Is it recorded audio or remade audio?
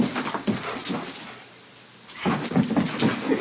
recorded